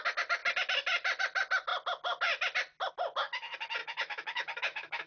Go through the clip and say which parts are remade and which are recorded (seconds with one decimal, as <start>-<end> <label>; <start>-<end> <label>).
0.0-3.8 recorded; 3.8-5.1 remade